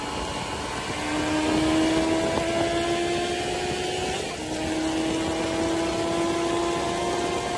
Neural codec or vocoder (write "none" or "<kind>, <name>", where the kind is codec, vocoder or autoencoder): none